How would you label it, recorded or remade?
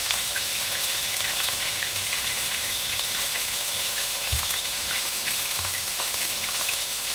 remade